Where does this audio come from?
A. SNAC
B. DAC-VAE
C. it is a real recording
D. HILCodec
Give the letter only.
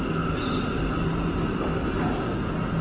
C